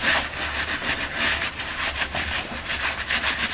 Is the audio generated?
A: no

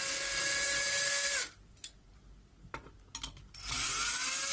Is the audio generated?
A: no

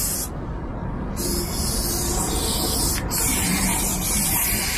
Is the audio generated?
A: no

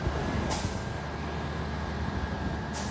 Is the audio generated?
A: no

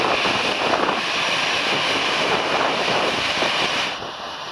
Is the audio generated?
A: no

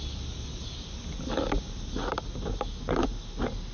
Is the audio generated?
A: no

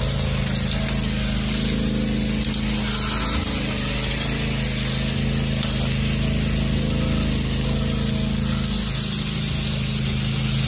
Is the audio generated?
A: no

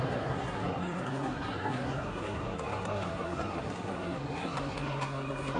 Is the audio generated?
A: yes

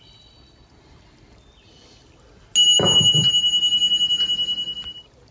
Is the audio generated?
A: no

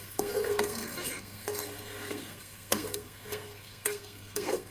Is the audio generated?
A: yes